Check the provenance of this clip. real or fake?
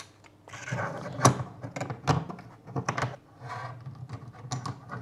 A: real